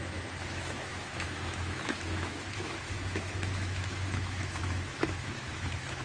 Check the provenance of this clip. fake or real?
fake